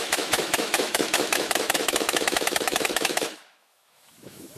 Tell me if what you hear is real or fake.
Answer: fake